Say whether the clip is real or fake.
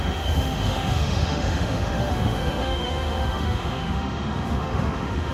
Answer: fake